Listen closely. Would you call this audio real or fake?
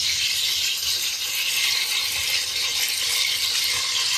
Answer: real